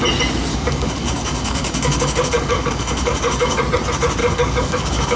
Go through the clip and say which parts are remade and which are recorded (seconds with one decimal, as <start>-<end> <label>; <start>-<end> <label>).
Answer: 0.0-0.5 recorded; 0.5-3.6 remade; 3.6-4.2 recorded; 4.2-5.2 remade